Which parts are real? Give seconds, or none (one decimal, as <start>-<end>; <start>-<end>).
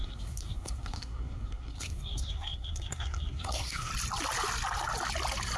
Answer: 3.9-5.6